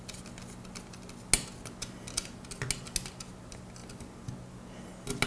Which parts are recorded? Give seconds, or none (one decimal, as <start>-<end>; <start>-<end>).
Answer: 0.0-5.3